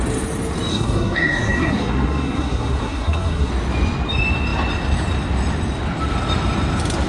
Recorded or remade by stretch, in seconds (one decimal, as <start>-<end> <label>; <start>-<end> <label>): 0.0-0.7 recorded; 0.7-3.5 remade; 3.5-7.1 recorded